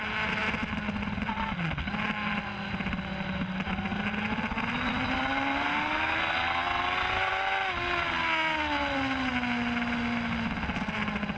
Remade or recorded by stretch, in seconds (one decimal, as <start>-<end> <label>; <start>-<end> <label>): 0.0-11.4 recorded